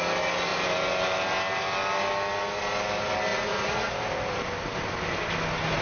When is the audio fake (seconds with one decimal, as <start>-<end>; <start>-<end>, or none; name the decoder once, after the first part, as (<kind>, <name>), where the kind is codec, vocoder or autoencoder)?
3.3-3.9 (vocoder, Vocos)